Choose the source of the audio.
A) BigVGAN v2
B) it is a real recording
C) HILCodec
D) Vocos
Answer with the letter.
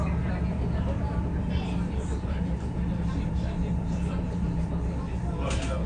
B